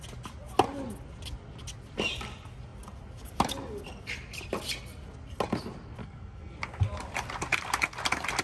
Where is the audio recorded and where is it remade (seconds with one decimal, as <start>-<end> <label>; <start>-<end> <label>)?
0.0-6.0 recorded; 6.0-6.6 remade; 6.6-8.4 recorded